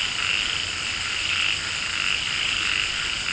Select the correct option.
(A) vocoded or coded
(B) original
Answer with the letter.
B